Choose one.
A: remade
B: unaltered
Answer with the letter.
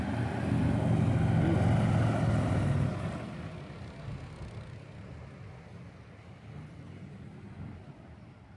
B